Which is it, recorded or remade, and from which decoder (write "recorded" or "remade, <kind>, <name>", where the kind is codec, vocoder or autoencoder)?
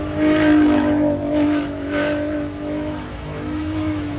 remade, autoencoder, DAC-VAE